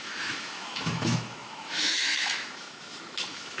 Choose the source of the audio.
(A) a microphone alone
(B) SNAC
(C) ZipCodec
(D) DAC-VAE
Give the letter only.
D